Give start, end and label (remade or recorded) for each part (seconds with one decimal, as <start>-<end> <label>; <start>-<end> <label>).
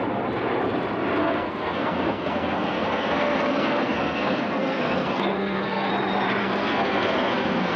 0.0-1.2 recorded; 1.2-5.9 remade; 5.9-6.4 recorded; 6.4-7.8 remade